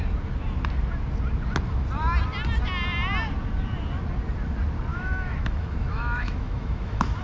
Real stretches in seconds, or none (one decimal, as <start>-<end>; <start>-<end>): 0.0-4.9